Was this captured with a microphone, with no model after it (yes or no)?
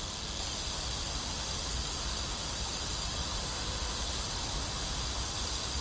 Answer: yes